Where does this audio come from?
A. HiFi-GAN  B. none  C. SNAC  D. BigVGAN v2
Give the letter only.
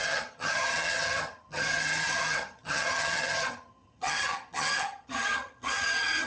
A